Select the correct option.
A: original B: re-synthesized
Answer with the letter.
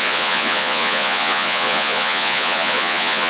B